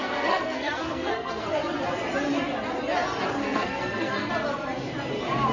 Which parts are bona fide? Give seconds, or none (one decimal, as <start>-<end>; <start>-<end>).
1.5-3.4; 4.3-5.5